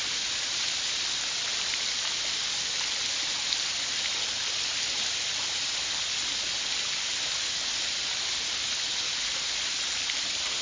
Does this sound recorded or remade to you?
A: recorded